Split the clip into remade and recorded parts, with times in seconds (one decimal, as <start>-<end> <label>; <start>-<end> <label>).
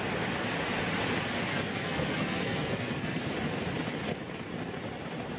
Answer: 0.0-1.5 recorded; 1.5-3.2 remade; 3.2-5.4 recorded